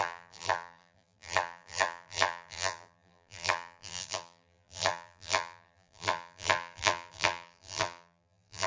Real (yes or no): no